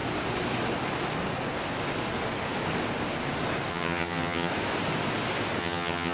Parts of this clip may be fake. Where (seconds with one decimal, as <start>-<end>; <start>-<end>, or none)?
3.7-4.5; 5.6-6.1